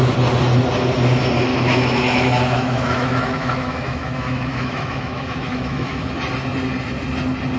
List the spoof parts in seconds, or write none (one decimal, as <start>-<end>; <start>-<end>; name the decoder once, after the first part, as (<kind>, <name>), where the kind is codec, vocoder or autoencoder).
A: 1.5-6.1 (autoencoder, DAC-VAE)